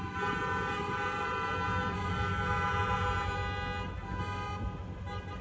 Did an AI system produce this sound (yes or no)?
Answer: no